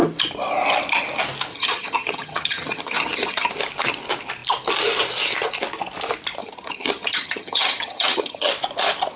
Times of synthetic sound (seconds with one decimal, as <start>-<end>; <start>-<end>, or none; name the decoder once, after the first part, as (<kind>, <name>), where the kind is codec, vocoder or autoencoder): 1.5-3.5 (vocoder, HiFi-GAN); 6.4-8.5